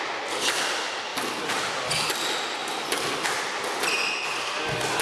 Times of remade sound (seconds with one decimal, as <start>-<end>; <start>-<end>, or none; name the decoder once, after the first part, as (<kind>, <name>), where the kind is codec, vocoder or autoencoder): none

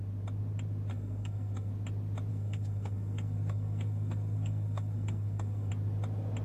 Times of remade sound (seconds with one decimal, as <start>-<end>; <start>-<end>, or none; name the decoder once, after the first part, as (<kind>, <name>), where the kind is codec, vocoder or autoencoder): 0.9-1.7 (codec, SNAC); 2.3-5.7

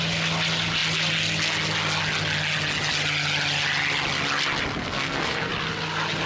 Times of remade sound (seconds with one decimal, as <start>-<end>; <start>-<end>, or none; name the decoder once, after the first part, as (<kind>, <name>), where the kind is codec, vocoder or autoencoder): 4.8-5.5 (codec, SNAC)